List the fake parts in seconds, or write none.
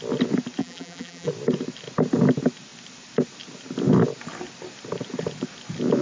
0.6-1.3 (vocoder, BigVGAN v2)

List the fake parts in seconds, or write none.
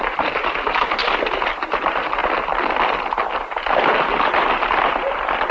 0.0-1.0 (vocoder, BigVGAN v2); 1.5-2.2; 4.8-5.5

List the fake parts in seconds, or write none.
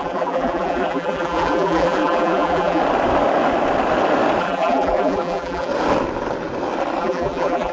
0.0-2.8 (vocoder, BigVGAN v2); 4.4-5.7; 7.0-7.7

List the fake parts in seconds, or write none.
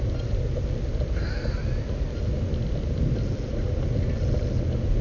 none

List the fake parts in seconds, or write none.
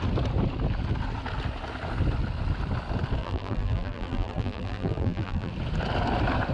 3.2-5.5 (vocoder, BigVGAN v2)